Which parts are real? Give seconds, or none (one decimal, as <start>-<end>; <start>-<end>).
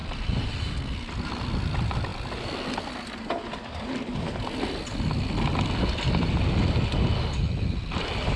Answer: 0.6-8.4